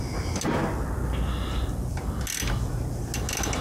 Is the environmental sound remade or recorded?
recorded